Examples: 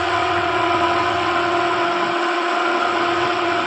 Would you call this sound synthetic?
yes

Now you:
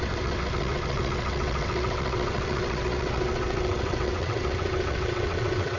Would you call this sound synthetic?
yes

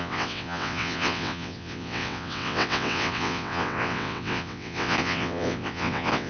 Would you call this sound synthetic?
yes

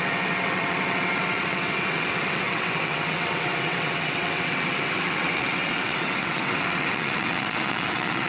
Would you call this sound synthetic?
yes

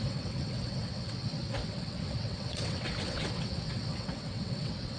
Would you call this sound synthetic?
yes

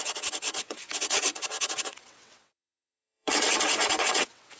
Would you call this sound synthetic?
yes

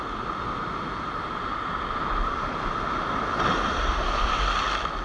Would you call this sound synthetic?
no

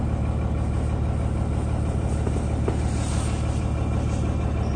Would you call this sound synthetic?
no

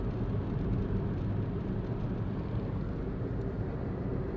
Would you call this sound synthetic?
no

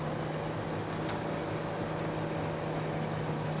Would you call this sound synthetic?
no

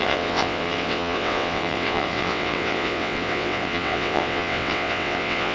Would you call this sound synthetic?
yes